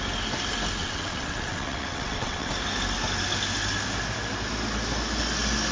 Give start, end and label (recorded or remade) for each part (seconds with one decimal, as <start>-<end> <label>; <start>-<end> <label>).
0.0-0.8 recorded; 0.8-2.5 remade; 2.5-5.7 recorded